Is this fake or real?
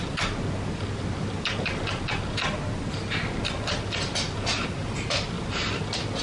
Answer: real